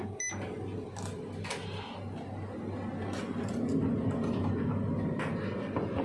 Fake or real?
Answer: real